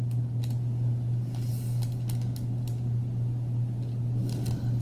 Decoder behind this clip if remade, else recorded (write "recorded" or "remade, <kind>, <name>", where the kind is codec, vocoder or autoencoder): recorded